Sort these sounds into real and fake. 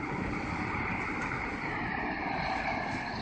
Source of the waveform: real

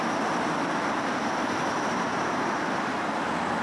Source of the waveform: fake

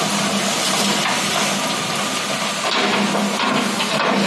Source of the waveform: real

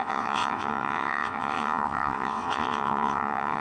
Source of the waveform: fake